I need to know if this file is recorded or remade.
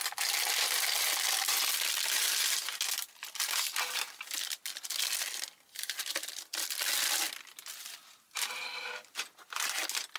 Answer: recorded